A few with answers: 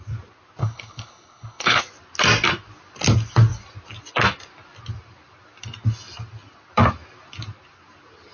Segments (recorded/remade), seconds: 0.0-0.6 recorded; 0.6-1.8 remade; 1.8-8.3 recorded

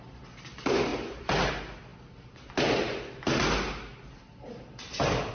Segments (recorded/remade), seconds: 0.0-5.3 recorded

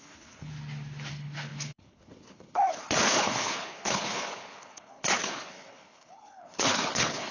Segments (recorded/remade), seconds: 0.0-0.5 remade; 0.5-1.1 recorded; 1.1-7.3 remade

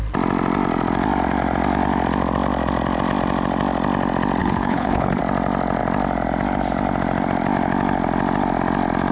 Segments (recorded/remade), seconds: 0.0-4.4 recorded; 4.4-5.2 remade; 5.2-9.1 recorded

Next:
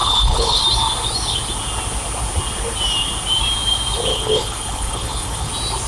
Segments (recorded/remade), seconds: 0.0-0.6 remade; 0.6-4.1 recorded; 4.1-5.5 remade; 5.5-5.9 recorded

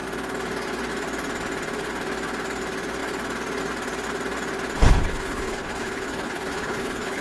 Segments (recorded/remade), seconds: 0.0-4.8 recorded; 4.8-7.2 remade

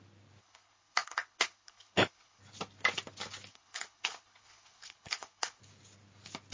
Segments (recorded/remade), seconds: 0.0-0.4 recorded; 0.4-2.4 remade; 2.4-3.5 recorded; 3.5-5.6 remade; 5.6-6.5 recorded